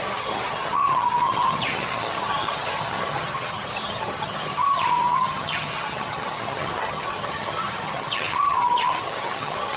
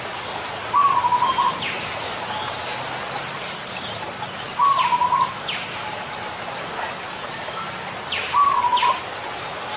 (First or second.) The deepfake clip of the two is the first